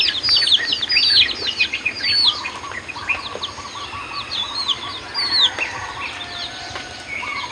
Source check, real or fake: real